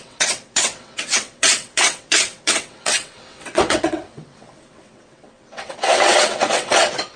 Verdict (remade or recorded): remade